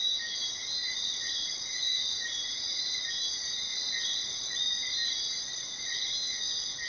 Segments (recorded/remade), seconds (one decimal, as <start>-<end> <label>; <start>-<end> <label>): 0.0-0.8 recorded; 0.8-3.1 remade; 3.1-3.7 recorded; 3.7-4.7 remade; 4.7-5.5 recorded; 5.5-6.1 remade; 6.1-6.9 recorded

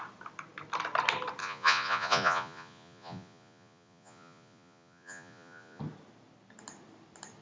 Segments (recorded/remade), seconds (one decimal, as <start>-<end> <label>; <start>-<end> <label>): 0.0-1.4 recorded; 1.4-5.8 remade; 5.8-7.4 recorded

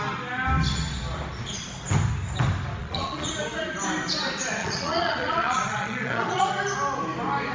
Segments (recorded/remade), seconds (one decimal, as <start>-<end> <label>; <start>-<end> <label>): 0.0-2.8 recorded; 2.8-3.3 remade; 3.3-4.6 recorded; 4.6-6.5 remade; 6.5-7.5 recorded

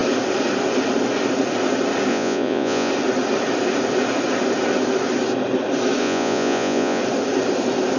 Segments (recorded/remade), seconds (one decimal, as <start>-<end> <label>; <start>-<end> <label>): 0.0-2.1 recorded; 2.1-2.9 remade; 2.9-6.0 recorded; 6.0-7.0 remade; 7.0-8.0 recorded